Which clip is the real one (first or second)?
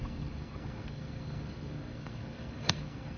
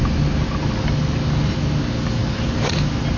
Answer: second